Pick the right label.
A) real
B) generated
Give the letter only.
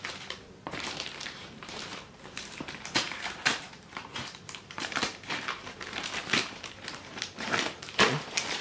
B